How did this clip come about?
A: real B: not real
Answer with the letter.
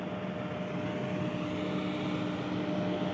A